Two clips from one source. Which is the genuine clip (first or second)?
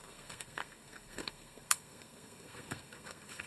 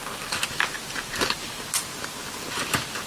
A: second